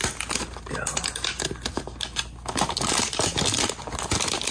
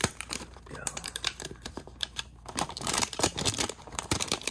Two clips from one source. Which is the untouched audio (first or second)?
first